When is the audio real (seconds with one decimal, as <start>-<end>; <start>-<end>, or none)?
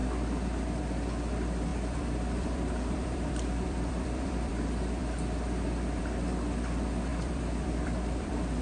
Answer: 0.0-1.7; 4.5-7.1